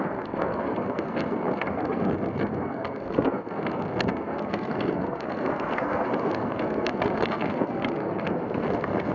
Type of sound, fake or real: fake